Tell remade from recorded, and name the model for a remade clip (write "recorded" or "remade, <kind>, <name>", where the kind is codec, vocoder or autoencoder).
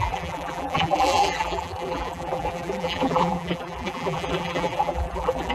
remade, vocoder, BigVGAN v2